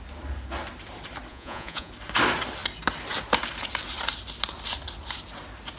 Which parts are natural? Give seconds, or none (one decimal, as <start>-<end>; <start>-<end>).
0.0-1.3; 1.9-5.8